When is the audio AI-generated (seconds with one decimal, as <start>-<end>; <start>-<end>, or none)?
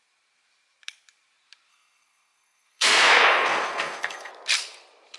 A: 1.7-4.3